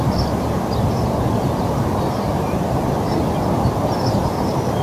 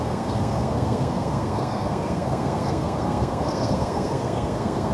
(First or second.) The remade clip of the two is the second